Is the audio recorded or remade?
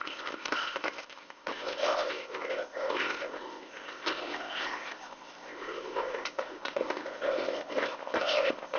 remade